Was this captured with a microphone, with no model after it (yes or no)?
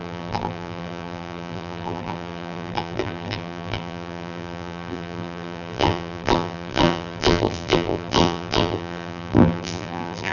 no